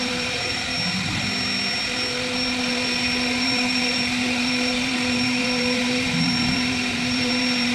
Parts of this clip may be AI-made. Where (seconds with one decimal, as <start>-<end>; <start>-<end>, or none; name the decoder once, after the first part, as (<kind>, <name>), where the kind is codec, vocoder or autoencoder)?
0.0-0.7 (vocoder, BigVGAN v2); 2.6-7.7